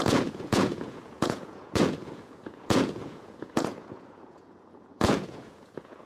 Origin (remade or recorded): remade